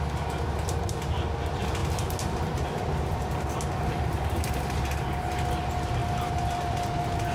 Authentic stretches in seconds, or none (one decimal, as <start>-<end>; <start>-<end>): 0.0-7.3